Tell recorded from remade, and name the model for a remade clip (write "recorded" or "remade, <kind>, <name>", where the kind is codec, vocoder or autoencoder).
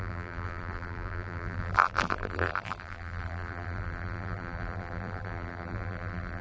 remade, vocoder, BigVGAN v2